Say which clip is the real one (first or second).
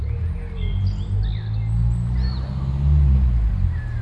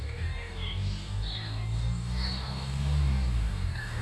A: first